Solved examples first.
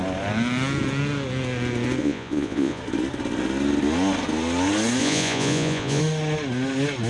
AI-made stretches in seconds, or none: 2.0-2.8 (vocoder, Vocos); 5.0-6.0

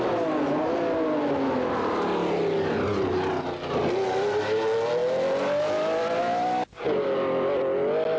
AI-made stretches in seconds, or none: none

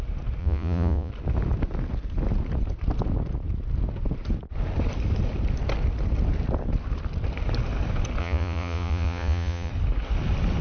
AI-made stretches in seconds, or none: 0.4-1.1 (vocoder, Vocos); 8.2-9.7

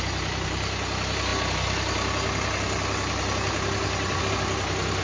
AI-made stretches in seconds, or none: none

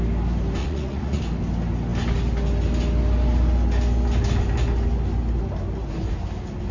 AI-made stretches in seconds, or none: 0.6-1.2 (vocoder, Vocos)

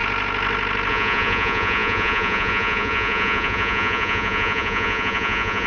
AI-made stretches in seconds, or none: 0.9-5.7 (vocoder, Vocos)